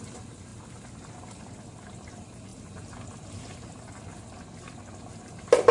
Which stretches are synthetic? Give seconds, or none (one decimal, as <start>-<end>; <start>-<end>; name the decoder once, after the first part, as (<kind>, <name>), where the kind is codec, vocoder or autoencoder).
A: none